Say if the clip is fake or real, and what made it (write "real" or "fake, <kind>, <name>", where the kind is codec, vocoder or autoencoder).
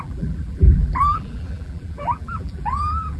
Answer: fake, vocoder, BigVGAN v2